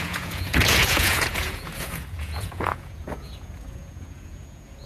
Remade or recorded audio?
remade